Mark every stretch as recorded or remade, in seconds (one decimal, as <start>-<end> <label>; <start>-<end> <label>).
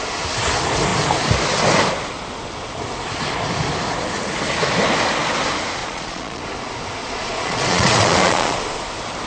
0.0-5.8 recorded; 5.8-6.4 remade; 6.4-7.0 recorded; 7.0-8.6 remade; 8.6-9.3 recorded